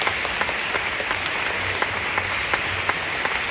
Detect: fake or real real